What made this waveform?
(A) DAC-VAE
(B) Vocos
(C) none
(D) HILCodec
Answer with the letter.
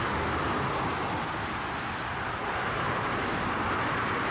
C